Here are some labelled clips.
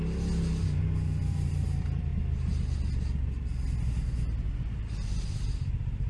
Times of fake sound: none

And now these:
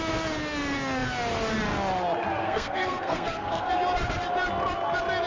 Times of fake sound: 2.4-3.7 (codec, SNAC)